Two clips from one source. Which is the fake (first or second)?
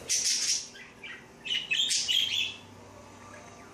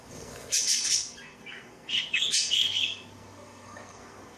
second